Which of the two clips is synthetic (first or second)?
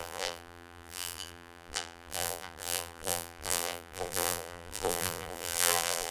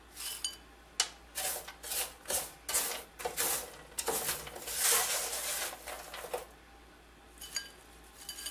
first